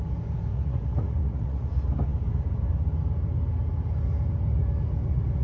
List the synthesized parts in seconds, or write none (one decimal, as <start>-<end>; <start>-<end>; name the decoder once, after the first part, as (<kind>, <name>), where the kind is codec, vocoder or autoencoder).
0.5-1.6 (vocoder, Vocos)